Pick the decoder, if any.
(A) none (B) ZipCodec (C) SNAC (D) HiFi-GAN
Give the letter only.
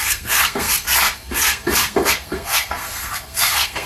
C